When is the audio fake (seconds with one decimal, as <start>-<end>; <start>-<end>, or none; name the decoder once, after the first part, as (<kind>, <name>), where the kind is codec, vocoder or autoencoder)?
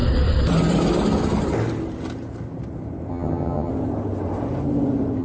3.1-3.7 (vocoder, HiFi-GAN)